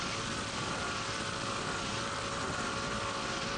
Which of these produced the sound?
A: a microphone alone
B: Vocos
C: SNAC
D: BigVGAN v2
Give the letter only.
D